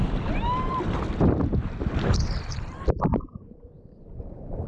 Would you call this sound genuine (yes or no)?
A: no